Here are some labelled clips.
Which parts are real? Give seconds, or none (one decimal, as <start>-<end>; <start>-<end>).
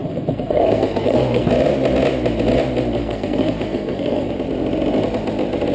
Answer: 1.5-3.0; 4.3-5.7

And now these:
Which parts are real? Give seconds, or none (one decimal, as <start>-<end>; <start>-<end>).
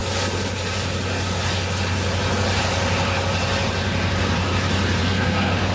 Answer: 0.0-5.0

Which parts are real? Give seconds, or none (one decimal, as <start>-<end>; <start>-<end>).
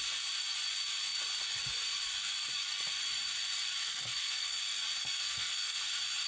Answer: 0.0-3.8; 4.6-5.0; 5.8-6.3